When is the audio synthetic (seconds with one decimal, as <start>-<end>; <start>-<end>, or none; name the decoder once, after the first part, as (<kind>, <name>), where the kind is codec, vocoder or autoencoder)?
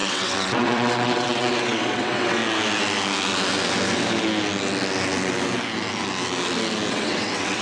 0.0-2.4 (vocoder, WaveNeXt); 6.9-7.6